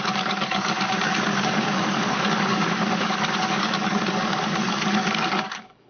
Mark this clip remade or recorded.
remade